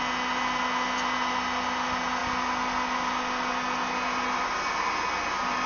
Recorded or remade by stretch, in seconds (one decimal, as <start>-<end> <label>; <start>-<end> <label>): 0.0-5.7 recorded